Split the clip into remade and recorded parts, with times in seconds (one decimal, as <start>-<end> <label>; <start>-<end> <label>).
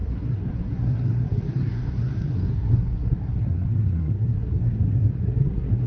0.0-5.9 remade